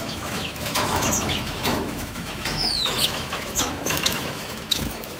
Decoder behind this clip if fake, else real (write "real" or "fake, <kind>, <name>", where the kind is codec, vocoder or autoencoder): fake, autoencoder, DAC-VAE